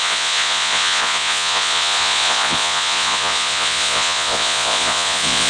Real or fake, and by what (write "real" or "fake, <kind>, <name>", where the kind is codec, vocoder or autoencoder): fake, vocoder, Vocos